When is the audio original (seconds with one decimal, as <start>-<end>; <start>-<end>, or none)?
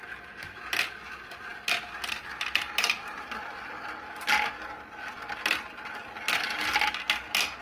0.0-7.6